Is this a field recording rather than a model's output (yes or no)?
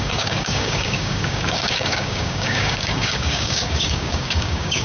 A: no